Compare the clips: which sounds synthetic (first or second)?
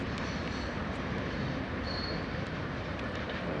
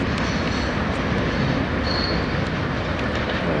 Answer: first